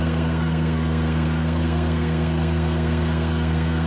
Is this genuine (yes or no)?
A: no